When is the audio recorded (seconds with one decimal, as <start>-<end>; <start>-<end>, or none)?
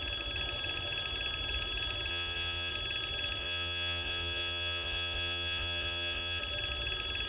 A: 0.0-2.1; 2.7-3.4; 6.4-7.3